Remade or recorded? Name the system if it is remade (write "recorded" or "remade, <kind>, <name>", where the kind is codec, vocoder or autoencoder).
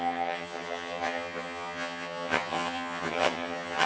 remade, vocoder, HiFi-GAN